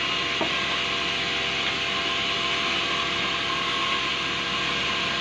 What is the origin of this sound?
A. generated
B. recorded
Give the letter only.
B